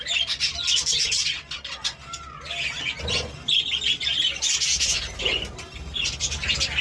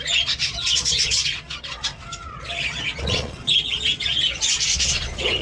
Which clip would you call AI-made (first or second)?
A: second